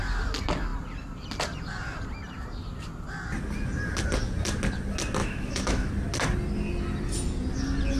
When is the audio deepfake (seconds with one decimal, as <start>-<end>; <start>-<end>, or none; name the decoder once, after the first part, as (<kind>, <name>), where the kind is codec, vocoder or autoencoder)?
5.2-5.9 (autoencoder, DAC-VAE)